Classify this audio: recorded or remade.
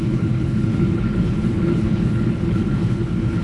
remade